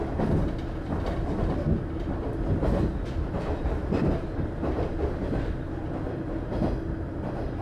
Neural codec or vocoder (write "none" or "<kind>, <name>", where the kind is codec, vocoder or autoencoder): none